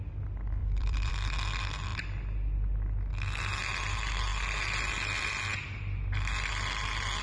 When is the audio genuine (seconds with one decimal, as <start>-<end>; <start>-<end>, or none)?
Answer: 0.0-0.6; 1.1-7.2

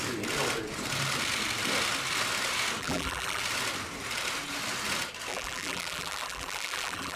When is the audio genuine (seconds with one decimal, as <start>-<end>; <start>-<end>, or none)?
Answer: 0.0-2.8; 3.4-5.3

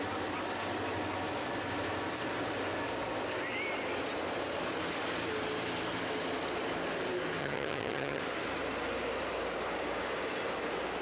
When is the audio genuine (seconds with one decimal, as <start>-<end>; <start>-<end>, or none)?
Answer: 0.0-7.4; 8.2-11.0

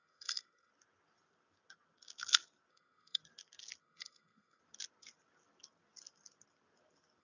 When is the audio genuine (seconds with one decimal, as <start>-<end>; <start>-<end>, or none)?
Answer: 0.7-2.7; 3.2-3.8; 4.6-7.2

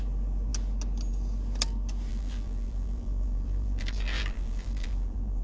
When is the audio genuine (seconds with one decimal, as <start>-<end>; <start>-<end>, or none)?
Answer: 0.0-2.1

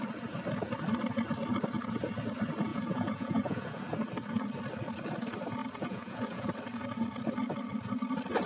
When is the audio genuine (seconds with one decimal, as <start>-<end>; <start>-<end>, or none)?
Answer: 0.0-2.7; 3.8-5.6; 6.5-8.5

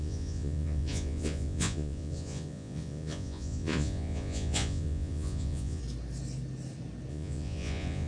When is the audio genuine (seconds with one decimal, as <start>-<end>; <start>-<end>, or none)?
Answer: 5.8-7.1